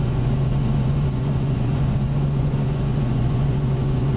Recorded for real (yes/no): no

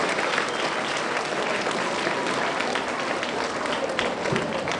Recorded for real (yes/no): yes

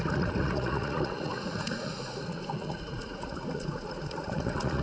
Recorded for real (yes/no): no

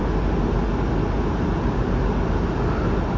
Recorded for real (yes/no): yes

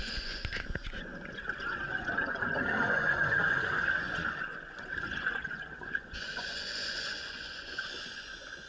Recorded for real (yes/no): no